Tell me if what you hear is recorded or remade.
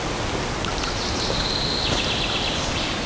recorded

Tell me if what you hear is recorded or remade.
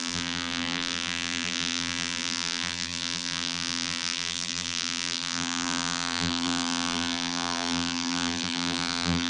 remade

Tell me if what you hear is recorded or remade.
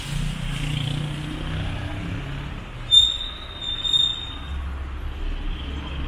recorded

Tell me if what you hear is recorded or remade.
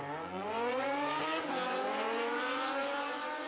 remade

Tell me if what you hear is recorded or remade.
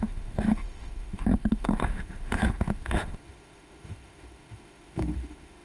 remade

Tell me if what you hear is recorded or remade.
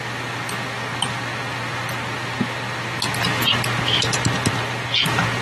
recorded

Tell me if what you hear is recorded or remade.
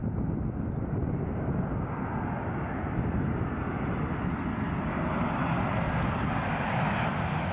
recorded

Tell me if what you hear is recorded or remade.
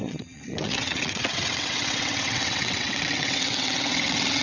remade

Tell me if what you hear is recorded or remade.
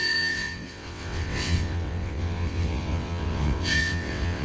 remade